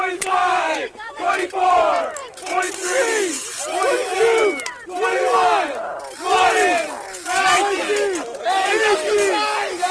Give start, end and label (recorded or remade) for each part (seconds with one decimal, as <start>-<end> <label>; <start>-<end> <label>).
0.0-0.4 recorded; 0.4-1.5 remade; 1.5-9.9 recorded